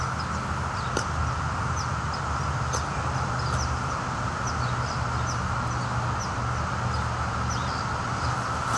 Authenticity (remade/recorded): recorded